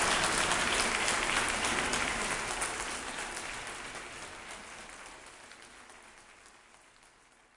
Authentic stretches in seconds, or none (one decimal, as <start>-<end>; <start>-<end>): 0.0-7.6